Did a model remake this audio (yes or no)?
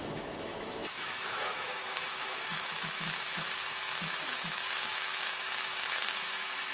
yes